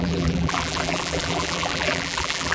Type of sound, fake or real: fake